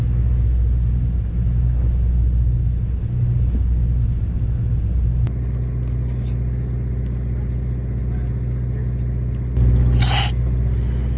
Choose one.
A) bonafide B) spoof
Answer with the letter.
A